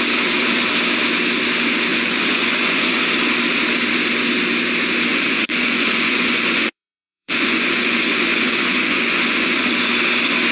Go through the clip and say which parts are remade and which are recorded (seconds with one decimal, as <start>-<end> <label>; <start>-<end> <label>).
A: 0.0-1.9 recorded; 1.9-3.0 remade; 3.0-5.1 recorded; 5.1-9.9 remade; 9.9-10.5 recorded